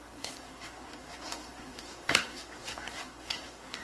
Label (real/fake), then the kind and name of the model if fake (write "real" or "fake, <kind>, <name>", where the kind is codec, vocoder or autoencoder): fake, codec, SNAC